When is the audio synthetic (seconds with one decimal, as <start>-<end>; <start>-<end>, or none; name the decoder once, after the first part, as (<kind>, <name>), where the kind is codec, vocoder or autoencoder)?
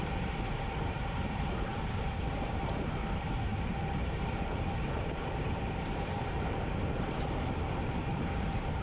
0.0-8.8 (vocoder, BigVGAN v2)